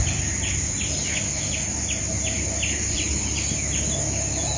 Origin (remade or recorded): recorded